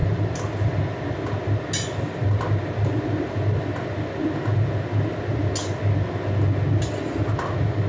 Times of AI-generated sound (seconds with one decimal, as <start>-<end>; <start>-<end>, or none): none